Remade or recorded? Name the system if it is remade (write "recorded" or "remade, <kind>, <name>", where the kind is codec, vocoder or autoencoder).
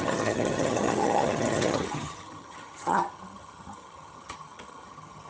remade, vocoder, HiFi-GAN